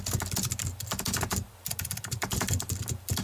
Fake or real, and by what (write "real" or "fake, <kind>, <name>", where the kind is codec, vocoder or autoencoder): real